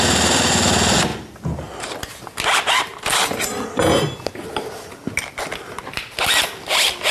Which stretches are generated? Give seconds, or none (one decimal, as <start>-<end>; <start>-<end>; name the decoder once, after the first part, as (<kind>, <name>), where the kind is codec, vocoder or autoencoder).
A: none